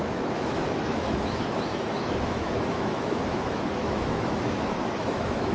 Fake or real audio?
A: fake